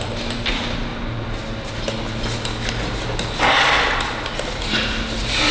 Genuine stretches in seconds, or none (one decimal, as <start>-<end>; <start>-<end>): 0.0-5.5

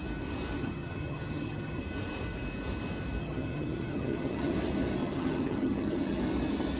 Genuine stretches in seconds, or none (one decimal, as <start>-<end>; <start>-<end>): 0.0-0.6; 1.8-3.2; 4.5-5.0; 6.2-6.8

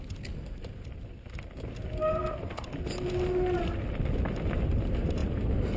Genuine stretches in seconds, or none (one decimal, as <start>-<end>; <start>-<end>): 0.0-5.8

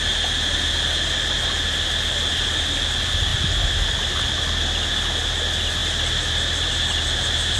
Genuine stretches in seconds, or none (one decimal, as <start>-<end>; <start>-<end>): 0.0-3.3; 4.2-5.8

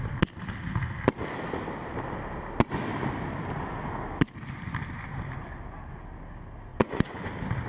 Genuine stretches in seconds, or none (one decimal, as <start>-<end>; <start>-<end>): 0.0-6.7; 7.3-7.7

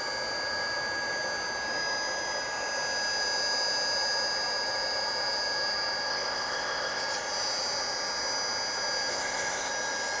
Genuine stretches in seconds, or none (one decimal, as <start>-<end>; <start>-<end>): 0.0-6.1; 7.0-9.1; 9.7-10.2

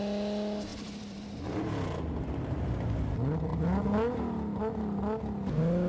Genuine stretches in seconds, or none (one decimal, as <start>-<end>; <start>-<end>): 0.0-0.7; 1.7-5.9

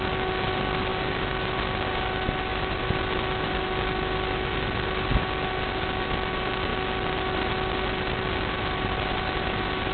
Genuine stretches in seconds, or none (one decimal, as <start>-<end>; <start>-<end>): 0.0-9.9